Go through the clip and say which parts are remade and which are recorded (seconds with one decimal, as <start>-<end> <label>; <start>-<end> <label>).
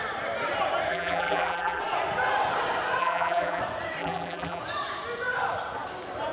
0.0-0.9 recorded; 0.9-1.8 remade; 1.8-3.0 recorded; 3.0-3.6 remade; 3.6-4.0 recorded; 4.0-4.6 remade; 4.6-6.3 recorded